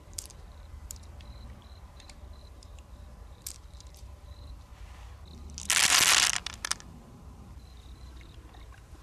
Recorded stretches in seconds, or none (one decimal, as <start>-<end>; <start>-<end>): 4.7-6.9